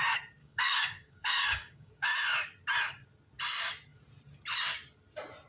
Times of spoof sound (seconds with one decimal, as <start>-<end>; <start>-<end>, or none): 0.4-1.9